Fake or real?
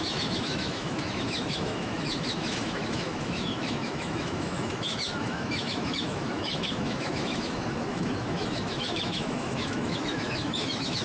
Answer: fake